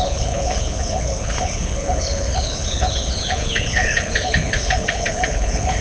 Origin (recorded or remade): remade